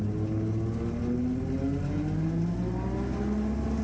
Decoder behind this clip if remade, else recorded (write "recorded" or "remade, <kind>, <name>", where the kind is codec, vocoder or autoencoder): recorded